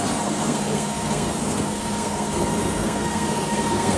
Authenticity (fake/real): fake